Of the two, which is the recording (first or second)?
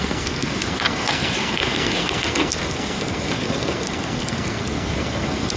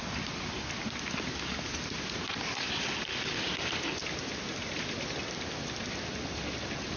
second